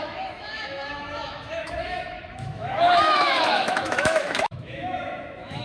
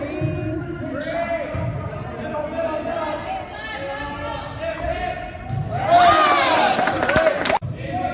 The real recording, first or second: second